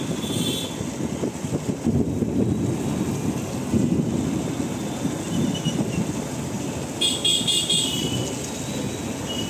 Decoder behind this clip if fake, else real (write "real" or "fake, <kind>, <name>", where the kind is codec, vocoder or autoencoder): real